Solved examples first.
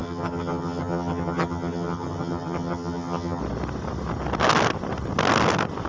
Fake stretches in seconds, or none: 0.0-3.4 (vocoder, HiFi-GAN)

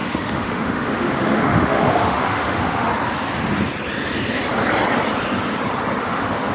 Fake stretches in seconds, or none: 0.0-2.9 (autoencoder, DAC-VAE); 6.0-6.5